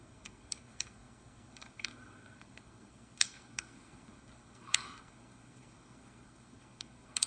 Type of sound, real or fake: fake